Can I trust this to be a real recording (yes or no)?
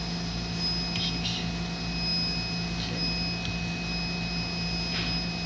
yes